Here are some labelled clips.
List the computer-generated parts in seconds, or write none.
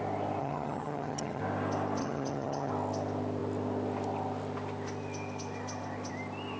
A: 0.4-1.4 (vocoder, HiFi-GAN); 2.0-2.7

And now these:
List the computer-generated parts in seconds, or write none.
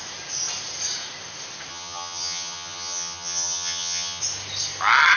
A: 1.7-4.2 (vocoder, HiFi-GAN)